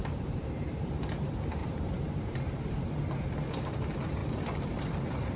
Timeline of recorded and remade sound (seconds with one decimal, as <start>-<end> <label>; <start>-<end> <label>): 0.0-0.9 remade; 0.9-1.6 recorded; 1.6-2.9 remade; 2.9-4.2 recorded; 4.2-5.4 remade